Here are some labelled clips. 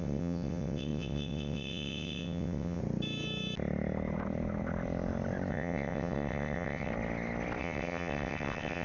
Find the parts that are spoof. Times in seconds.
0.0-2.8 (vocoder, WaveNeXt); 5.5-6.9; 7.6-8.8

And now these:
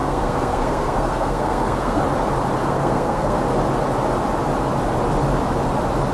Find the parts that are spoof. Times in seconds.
0.0-2.0 (codec, SNAC); 2.6-3.4

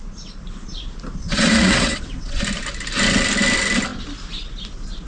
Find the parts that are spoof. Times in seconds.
1.2-2.4 (vocoder, WaveNeXt)

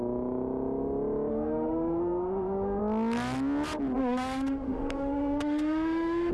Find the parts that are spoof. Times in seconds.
1.3-2.8 (autoencoder, DAC-VAE); 4.0-6.3

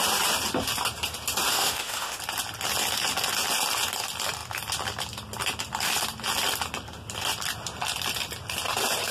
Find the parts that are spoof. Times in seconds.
1.5-2.2 (autoencoder, DAC-VAE)

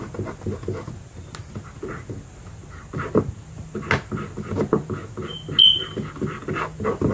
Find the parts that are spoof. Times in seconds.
none